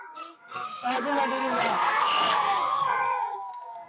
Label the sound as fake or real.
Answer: fake